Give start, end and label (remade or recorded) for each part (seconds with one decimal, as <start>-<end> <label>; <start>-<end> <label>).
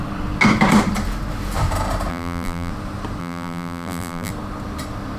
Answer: 0.0-2.1 recorded; 2.1-2.7 remade; 2.7-3.2 recorded; 3.2-4.3 remade; 4.3-5.2 recorded